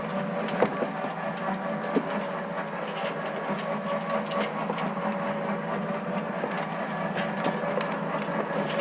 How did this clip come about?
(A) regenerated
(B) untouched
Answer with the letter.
B